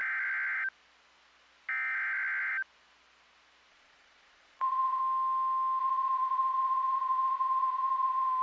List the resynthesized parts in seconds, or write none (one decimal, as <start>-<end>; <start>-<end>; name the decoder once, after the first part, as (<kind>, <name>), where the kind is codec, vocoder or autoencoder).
3.7-5.0 (vocoder, Vocos); 5.8-8.4